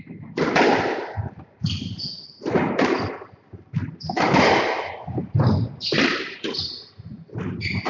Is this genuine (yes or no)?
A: yes